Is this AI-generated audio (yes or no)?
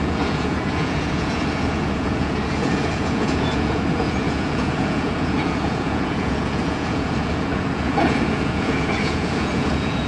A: yes